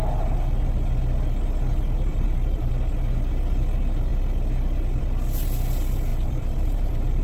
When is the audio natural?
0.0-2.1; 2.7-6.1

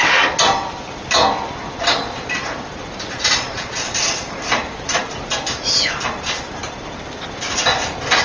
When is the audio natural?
0.0-1.6; 5.3-8.2

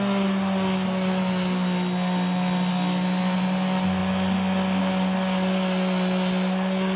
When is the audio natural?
0.0-7.0